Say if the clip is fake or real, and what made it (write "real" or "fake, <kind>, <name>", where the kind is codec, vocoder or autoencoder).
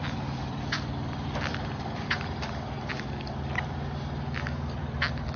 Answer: fake, vocoder, BigVGAN v2